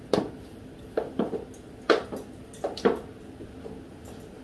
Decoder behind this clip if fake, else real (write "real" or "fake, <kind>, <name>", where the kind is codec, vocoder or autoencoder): real